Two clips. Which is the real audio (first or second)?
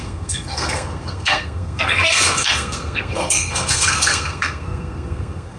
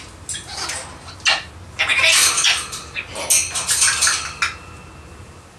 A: second